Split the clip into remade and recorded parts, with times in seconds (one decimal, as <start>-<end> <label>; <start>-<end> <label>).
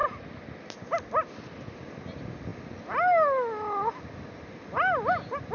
0.0-5.5 recorded